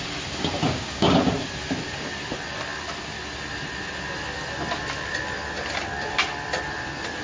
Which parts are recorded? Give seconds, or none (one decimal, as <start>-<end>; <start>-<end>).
0.0-0.6; 1.1-7.2